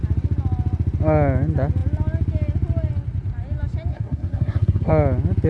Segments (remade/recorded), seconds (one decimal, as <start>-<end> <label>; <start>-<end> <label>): 0.0-3.9 recorded; 3.9-4.9 remade; 4.9-5.5 recorded